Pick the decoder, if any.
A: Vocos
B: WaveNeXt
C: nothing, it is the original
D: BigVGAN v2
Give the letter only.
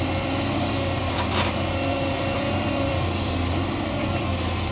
D